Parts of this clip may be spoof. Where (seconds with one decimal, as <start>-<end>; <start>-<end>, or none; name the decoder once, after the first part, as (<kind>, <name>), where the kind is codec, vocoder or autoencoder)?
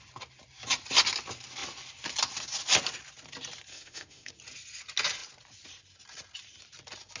3.7-4.3 (autoencoder, DAC-VAE)